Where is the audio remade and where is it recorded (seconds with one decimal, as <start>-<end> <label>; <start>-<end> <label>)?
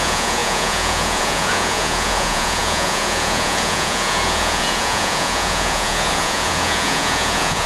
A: 0.0-7.7 remade